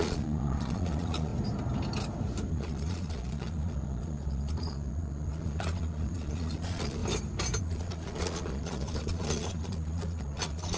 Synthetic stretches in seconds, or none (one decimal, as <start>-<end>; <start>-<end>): 0.0-1.3; 2.5-7.0; 7.6-10.8